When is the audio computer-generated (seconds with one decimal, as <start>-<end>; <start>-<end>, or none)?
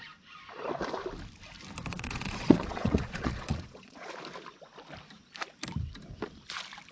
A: 1.9-4.1